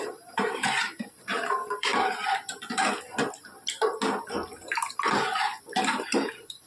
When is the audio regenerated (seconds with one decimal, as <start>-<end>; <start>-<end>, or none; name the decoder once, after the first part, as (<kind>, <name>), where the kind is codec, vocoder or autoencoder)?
0.0-1.9 (vocoder, BigVGAN v2); 5.9-6.7